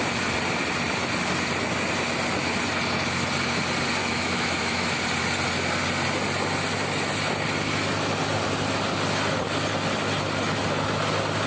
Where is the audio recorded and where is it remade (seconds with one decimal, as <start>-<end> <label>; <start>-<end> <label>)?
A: 0.0-4.0 recorded; 4.0-5.0 remade; 5.0-11.5 recorded